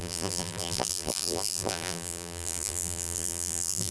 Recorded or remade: remade